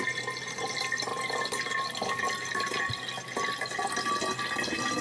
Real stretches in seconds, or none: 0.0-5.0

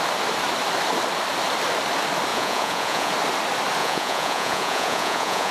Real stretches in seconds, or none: 0.0-2.3; 3.1-3.8

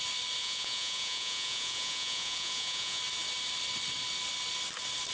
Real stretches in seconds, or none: 0.0-0.4; 3.0-5.1

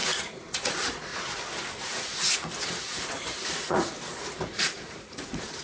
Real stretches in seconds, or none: 1.1-1.8

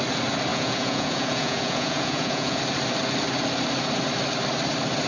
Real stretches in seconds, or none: 0.0-0.5; 2.6-5.1

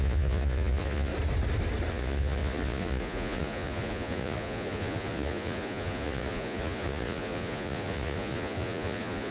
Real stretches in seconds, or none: 1.1-1.9

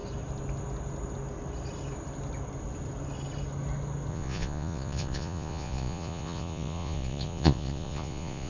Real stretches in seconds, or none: 0.0-4.1

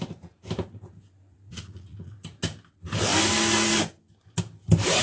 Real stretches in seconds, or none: 0.0-1.5; 2.4-5.0